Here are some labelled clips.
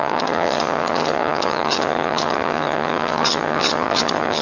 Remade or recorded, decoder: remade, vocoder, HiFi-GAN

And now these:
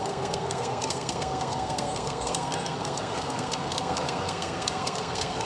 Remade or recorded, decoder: remade, codec, SNAC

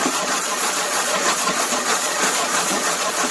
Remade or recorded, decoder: remade, vocoder, Vocos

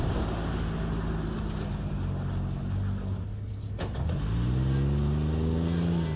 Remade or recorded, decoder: recorded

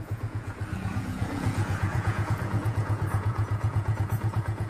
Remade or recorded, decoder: remade, vocoder, Vocos